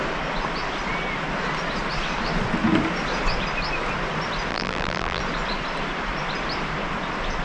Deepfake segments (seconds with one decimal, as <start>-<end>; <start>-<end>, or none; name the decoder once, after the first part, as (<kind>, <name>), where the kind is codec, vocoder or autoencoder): 4.5-5.2 (vocoder, BigVGAN v2)